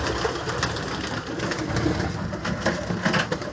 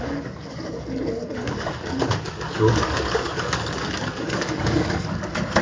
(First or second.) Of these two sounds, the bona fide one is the first